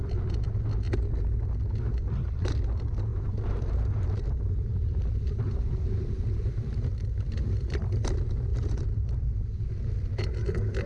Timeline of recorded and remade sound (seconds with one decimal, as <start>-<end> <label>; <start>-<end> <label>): 0.0-3.1 recorded; 3.1-7.6 remade; 7.6-8.5 recorded; 8.5-9.7 remade; 9.7-10.9 recorded

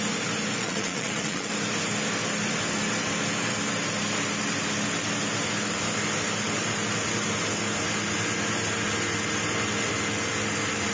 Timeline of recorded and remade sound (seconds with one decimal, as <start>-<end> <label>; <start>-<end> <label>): 0.0-0.6 recorded; 0.6-1.5 remade; 1.5-10.9 recorded